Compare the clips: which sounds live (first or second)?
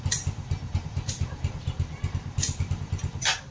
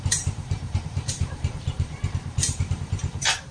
first